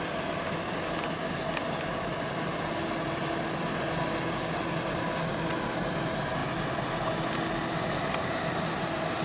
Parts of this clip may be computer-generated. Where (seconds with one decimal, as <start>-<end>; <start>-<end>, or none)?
none